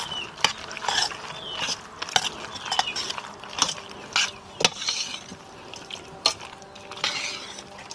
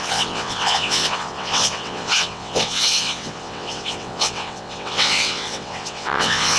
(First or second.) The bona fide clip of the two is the first